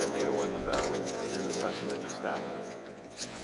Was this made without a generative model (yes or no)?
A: no